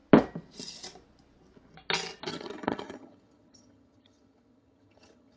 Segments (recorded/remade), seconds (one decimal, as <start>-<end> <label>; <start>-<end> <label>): 0.0-2.3 recorded; 2.3-5.4 remade